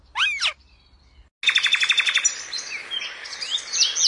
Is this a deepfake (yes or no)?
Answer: no